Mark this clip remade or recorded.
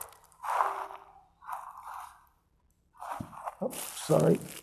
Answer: recorded